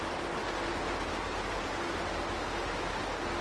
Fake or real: real